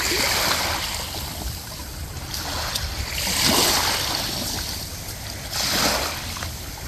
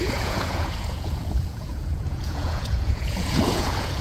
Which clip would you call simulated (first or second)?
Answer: second